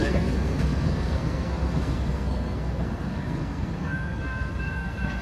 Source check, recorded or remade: remade